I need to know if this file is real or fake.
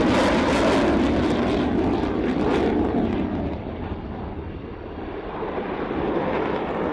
real